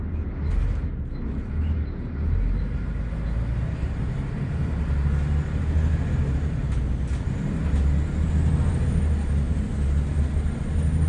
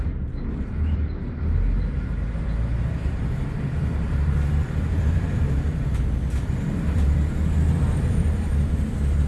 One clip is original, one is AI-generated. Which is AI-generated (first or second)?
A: second